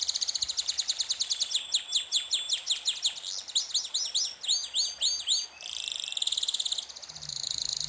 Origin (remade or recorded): recorded